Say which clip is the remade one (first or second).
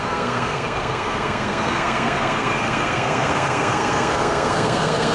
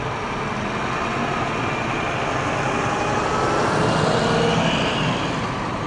first